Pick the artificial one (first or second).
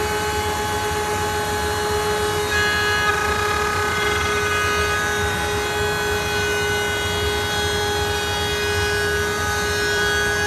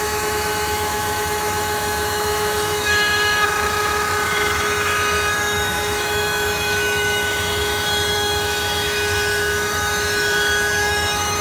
second